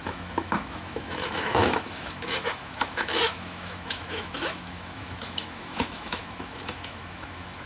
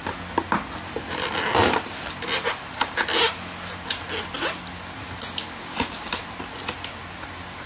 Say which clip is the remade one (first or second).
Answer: first